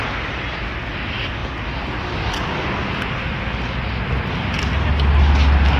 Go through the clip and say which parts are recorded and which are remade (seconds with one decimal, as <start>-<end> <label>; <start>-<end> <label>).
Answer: 0.0-5.8 recorded